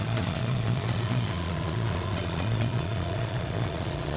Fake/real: fake